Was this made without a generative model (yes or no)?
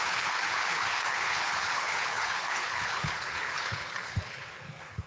no